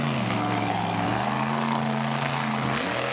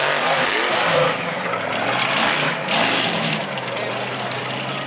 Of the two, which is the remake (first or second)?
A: first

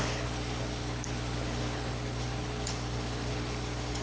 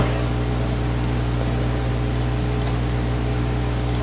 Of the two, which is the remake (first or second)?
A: first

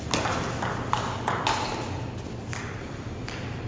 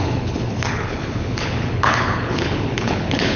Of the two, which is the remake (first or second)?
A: second